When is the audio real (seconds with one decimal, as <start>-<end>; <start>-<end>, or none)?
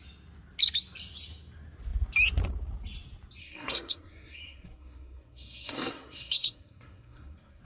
0.0-3.4